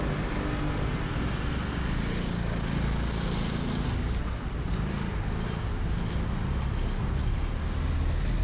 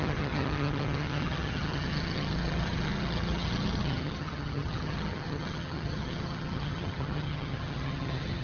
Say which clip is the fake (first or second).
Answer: second